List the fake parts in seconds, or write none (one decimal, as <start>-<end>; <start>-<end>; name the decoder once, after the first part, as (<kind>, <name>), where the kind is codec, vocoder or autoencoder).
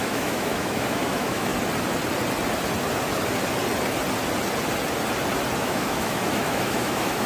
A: 0.0-1.5 (autoencoder, DAC-VAE); 5.6-7.3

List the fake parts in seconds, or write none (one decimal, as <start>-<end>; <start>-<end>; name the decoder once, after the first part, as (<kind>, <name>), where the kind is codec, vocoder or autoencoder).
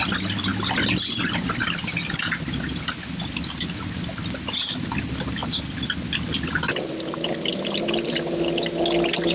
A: none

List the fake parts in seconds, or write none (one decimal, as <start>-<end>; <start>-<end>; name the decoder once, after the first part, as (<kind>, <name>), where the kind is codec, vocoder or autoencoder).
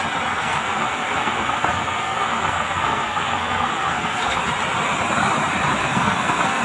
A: 0.4-4.4 (codec, SNAC); 5.8-6.6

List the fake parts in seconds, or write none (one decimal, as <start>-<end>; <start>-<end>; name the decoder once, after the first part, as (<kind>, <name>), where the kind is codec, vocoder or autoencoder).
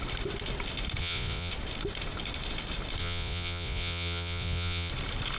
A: 1.0-1.5 (vocoder, Vocos); 3.0-4.9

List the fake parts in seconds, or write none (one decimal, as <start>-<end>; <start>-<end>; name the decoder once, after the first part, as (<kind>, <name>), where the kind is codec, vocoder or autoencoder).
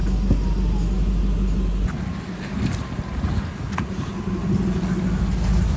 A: none